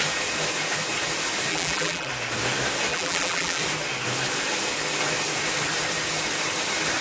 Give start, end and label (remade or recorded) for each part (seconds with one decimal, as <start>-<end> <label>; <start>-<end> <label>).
0.0-1.5 recorded; 1.5-2.1 remade; 2.1-2.9 recorded; 2.9-3.6 remade; 3.6-7.0 recorded